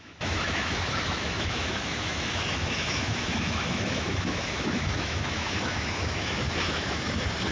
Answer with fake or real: fake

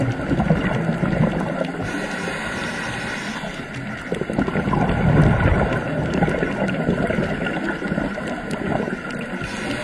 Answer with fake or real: real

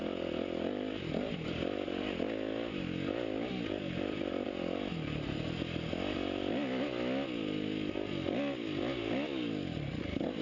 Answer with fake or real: real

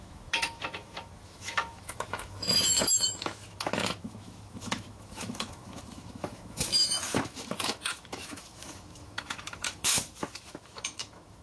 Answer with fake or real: fake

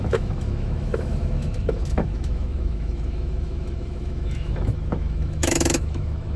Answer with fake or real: fake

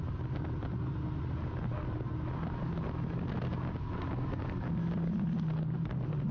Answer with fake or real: real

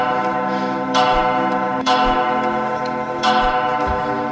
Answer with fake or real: fake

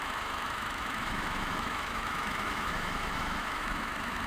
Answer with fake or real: fake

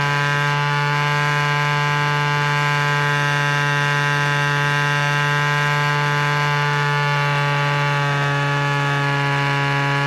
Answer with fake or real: real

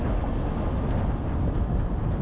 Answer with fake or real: real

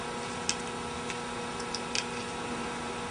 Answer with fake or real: real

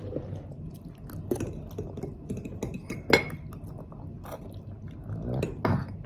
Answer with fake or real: real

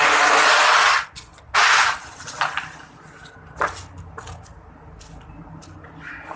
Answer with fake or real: real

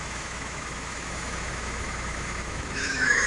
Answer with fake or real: fake